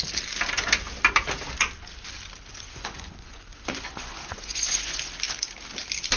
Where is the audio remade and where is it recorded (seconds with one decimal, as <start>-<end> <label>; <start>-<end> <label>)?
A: 0.0-2.5 recorded; 2.5-5.1 remade; 5.1-6.2 recorded